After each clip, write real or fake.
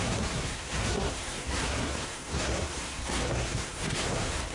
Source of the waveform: fake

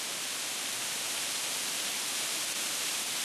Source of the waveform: real